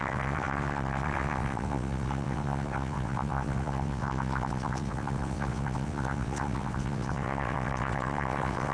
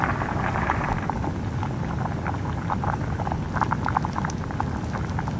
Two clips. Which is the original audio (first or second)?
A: second